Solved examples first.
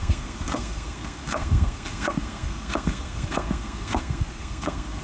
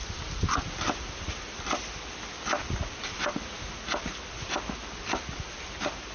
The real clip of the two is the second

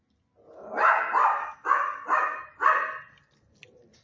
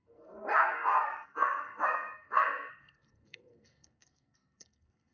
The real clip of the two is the first